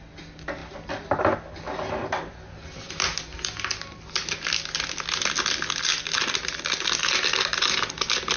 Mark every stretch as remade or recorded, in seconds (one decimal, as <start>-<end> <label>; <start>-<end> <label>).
0.0-8.4 recorded